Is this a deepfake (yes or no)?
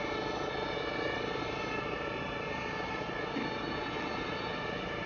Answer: no